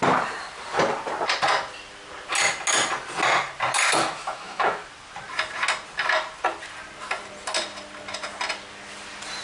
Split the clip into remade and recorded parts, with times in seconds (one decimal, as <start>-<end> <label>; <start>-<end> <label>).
0.0-4.0 recorded; 4.0-4.8 remade; 4.8-9.4 recorded